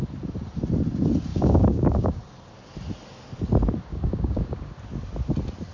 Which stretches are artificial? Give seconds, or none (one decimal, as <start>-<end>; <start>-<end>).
1.3-2.2; 3.9-4.7